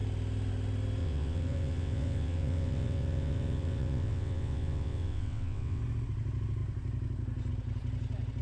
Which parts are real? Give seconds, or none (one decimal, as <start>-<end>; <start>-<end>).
0.0-1.0; 5.8-8.4